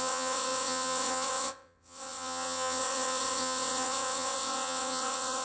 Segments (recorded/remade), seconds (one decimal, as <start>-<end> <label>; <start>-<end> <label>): 0.0-5.4 remade